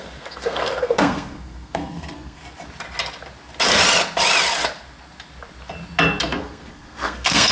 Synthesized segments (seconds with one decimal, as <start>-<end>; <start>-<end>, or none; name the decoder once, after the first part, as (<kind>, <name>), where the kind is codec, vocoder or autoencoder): 0.0-2.4 (codec, SNAC); 6.2-7.5